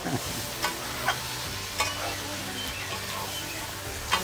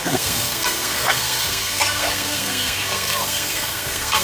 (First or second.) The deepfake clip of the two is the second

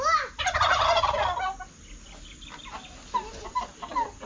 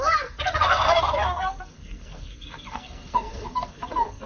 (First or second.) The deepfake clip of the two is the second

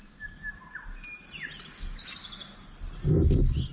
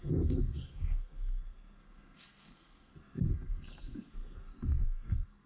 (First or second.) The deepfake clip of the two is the second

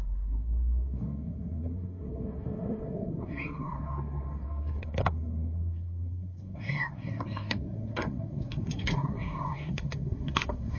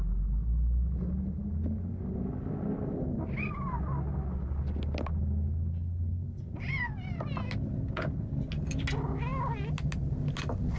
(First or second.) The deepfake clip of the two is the first